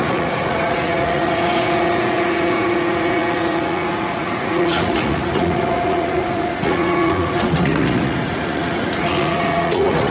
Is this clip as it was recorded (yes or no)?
no